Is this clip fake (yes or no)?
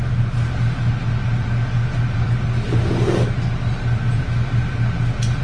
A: no